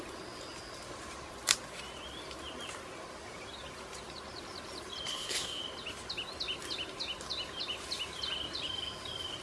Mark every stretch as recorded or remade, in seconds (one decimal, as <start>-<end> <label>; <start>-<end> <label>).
0.0-5.1 recorded; 5.1-5.6 remade; 5.6-9.4 recorded